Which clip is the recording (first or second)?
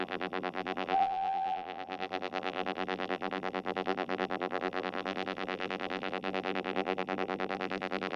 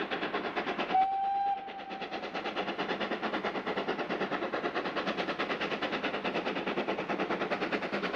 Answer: second